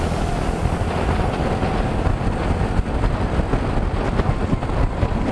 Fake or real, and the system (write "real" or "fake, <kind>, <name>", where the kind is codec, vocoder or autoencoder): real